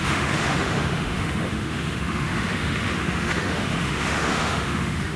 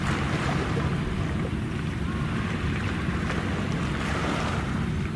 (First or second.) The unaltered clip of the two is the second